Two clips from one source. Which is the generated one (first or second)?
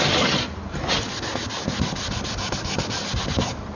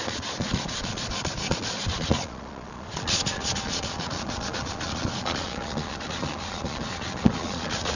second